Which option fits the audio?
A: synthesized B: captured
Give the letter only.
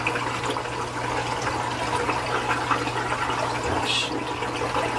B